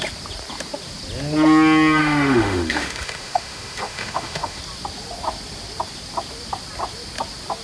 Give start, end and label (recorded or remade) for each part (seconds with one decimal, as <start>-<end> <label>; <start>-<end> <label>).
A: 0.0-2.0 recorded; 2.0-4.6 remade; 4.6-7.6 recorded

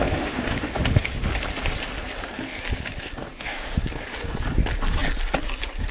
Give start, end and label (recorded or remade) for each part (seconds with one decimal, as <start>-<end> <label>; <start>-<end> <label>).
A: 0.0-1.3 remade; 1.3-3.2 recorded; 3.2-3.8 remade; 3.8-5.9 recorded

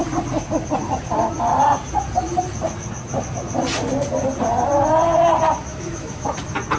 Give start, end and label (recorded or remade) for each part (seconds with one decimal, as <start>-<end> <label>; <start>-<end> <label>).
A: 0.0-5.7 recorded; 5.7-6.3 remade; 6.3-6.8 recorded

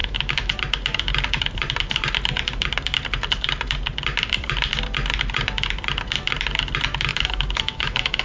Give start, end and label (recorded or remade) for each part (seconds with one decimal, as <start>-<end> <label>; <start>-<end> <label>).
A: 0.0-0.5 remade; 0.5-7.1 recorded; 7.1-8.2 remade